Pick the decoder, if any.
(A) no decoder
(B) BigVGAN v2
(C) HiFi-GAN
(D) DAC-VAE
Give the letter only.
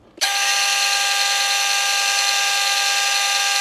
A